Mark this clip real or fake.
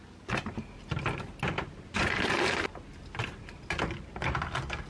real